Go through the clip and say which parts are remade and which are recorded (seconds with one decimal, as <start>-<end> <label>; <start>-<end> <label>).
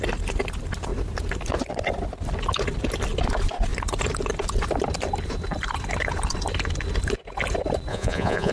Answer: 0.0-7.9 recorded; 7.9-8.5 remade